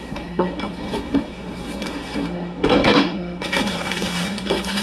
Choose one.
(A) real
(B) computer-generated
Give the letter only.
B